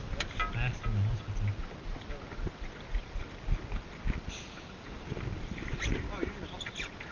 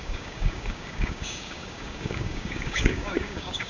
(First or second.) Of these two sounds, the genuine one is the first